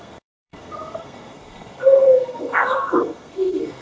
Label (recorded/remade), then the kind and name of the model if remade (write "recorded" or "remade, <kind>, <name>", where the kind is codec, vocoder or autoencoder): remade, codec, SNAC